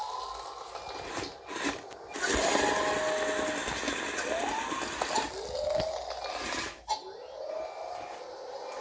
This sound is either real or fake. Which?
real